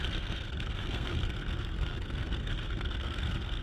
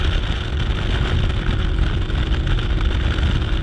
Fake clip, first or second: first